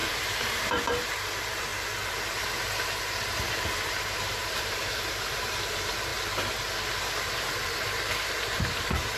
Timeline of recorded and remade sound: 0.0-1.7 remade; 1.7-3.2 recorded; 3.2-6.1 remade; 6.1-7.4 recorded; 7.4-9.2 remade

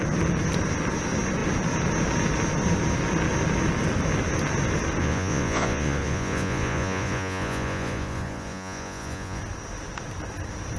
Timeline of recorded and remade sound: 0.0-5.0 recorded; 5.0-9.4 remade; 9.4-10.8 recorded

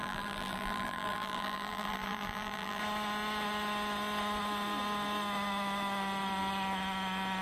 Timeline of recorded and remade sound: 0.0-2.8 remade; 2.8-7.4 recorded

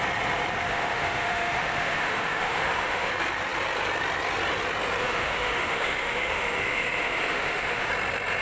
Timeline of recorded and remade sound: 0.0-0.7 recorded; 0.7-3.1 remade; 3.1-5.0 recorded; 5.0-7.9 remade; 7.9-8.4 recorded

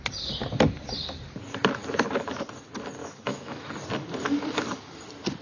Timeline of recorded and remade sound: 0.0-3.0 recorded; 3.0-3.7 remade; 3.7-5.4 recorded

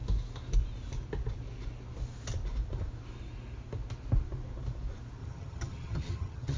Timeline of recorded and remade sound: 0.0-5.2 recorded; 5.2-6.6 remade

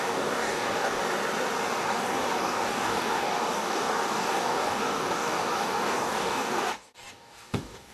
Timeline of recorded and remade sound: 0.0-1.0 remade; 1.0-1.8 recorded; 1.8-7.9 remade

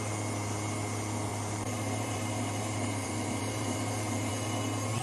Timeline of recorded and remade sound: 0.0-1.3 recorded; 1.3-4.3 remade; 4.3-5.0 recorded